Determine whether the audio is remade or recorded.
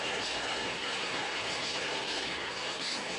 remade